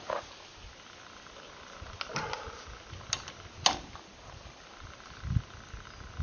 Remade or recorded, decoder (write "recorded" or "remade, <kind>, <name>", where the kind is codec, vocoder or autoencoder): recorded